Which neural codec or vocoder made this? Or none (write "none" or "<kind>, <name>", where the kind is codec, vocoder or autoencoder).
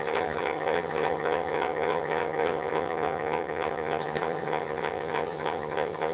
vocoder, HiFi-GAN